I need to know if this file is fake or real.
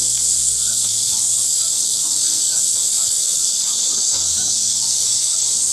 fake